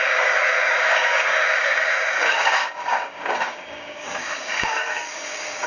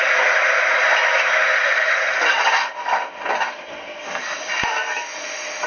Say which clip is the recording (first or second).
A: second